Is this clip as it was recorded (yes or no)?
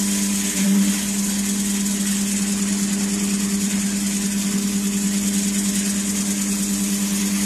yes